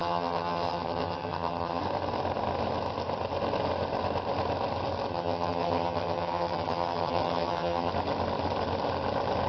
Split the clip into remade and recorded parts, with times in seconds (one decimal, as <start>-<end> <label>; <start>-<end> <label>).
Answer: 0.0-1.8 remade; 1.8-5.1 recorded; 5.1-7.9 remade; 7.9-9.5 recorded